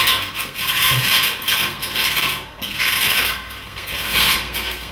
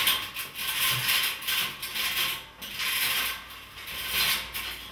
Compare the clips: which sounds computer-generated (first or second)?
first